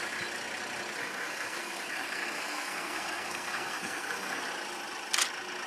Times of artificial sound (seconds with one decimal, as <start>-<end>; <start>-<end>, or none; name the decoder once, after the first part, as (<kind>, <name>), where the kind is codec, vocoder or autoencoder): 1.0-4.4 (codec, SNAC)